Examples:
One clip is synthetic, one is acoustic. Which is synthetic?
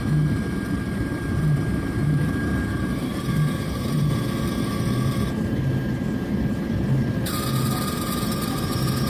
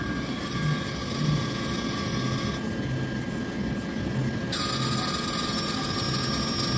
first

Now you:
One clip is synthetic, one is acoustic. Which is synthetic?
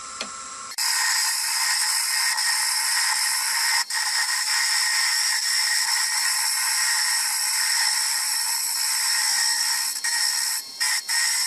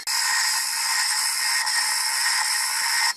first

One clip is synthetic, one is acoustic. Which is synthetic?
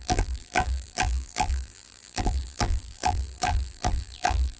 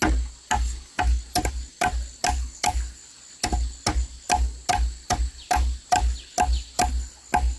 first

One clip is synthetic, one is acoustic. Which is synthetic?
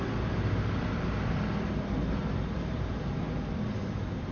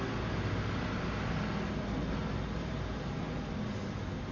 first